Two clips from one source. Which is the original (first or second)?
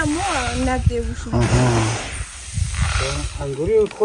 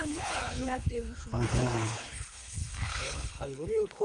first